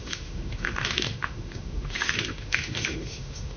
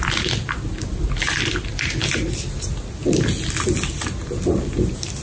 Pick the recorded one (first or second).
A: second